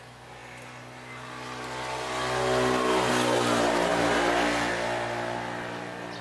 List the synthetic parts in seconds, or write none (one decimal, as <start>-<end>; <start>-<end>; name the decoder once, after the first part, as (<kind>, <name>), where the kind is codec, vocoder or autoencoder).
none